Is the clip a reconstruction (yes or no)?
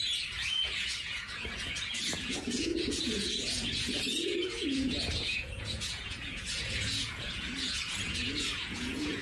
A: yes